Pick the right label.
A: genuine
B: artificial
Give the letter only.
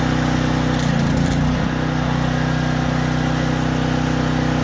A